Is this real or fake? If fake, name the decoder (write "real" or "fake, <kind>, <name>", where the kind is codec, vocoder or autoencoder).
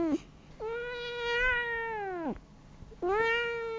real